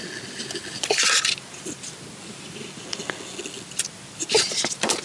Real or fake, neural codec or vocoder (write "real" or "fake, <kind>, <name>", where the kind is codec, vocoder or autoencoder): real